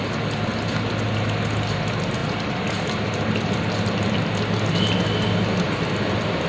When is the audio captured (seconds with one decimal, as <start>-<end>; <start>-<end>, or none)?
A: 0.0-6.5